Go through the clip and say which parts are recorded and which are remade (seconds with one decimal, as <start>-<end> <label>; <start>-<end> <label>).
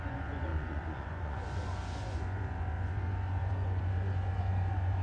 0.0-5.0 remade